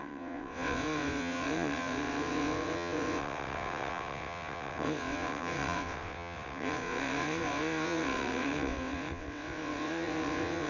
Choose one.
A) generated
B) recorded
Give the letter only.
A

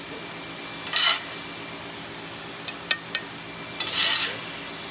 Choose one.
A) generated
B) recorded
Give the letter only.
B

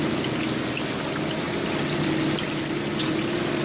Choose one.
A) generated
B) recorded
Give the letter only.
B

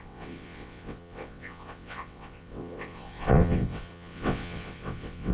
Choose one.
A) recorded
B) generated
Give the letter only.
B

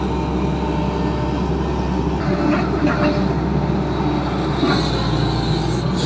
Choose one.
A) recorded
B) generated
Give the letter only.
A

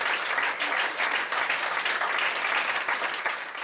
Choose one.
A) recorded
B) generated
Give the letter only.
A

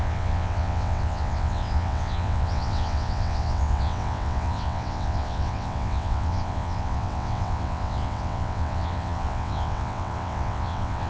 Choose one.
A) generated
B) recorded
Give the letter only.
A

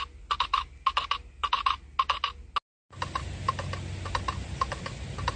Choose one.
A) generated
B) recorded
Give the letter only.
B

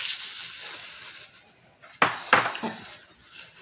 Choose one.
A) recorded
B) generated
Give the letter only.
A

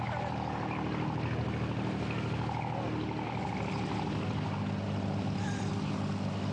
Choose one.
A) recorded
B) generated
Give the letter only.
A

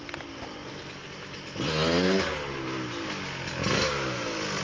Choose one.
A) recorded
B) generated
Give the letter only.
A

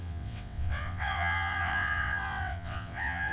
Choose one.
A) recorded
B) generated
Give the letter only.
B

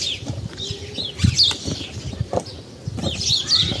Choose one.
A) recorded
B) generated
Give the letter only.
A